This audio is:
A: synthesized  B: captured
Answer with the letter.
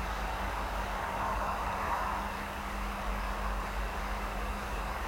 A